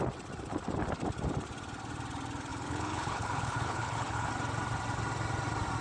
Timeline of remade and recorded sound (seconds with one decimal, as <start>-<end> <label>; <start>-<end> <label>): 0.0-2.5 recorded; 2.5-4.3 remade; 4.3-5.8 recorded